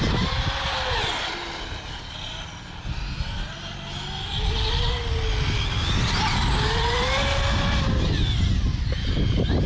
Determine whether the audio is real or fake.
real